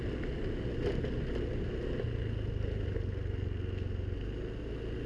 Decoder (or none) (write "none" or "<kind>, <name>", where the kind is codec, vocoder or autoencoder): none